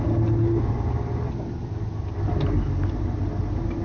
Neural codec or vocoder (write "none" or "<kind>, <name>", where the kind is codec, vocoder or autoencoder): none